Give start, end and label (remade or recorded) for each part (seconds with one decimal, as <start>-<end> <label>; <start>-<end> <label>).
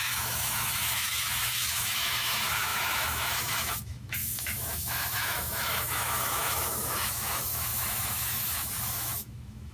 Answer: 0.0-9.7 remade